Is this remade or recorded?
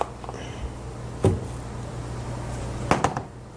recorded